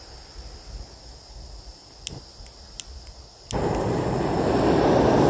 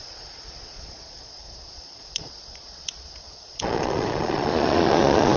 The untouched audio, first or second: first